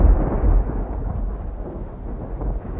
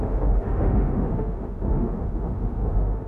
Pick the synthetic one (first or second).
second